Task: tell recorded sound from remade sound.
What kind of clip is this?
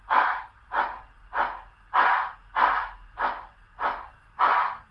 recorded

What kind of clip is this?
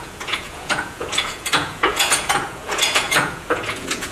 remade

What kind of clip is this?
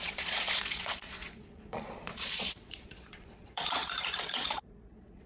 remade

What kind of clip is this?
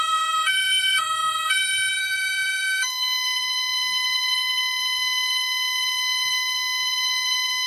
remade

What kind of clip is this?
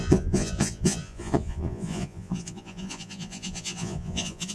remade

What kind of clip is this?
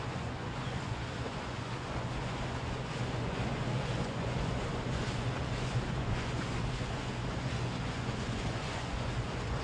remade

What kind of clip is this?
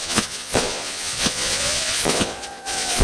remade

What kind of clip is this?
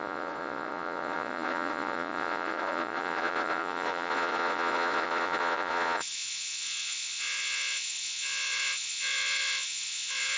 remade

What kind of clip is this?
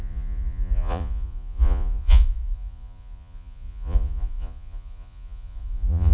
remade